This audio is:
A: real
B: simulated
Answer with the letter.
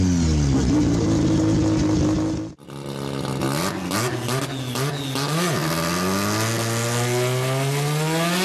A